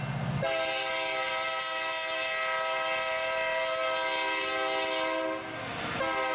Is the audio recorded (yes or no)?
yes